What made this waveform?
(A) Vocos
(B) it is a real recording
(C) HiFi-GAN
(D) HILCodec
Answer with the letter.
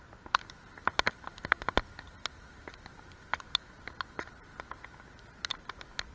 B